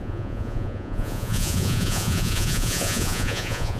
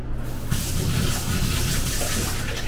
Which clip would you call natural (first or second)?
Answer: second